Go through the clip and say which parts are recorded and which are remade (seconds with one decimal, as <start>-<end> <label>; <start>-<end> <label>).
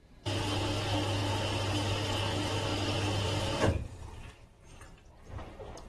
0.0-2.7 recorded; 2.7-5.1 remade; 5.1-5.9 recorded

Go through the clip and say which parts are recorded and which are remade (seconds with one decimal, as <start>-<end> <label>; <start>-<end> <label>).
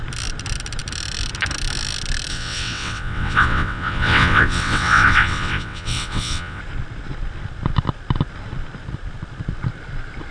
0.0-2.3 recorded; 2.3-6.6 remade; 6.6-10.3 recorded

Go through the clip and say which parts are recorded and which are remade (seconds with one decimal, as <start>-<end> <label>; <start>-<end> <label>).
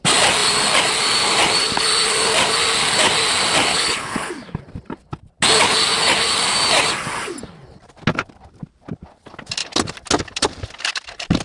0.0-3.7 recorded; 3.7-4.3 remade; 4.3-11.4 recorded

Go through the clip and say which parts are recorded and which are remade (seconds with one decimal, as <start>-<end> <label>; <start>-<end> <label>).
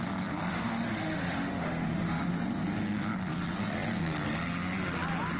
0.0-0.5 recorded; 0.5-2.3 remade; 2.3-5.4 recorded